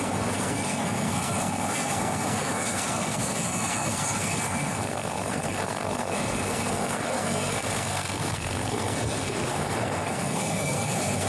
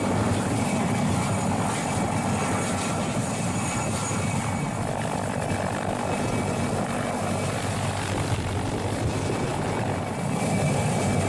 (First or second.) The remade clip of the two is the first